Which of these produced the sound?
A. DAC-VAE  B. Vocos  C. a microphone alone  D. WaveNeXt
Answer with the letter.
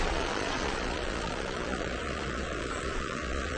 B